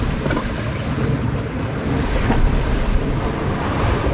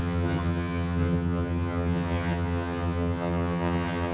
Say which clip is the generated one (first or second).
second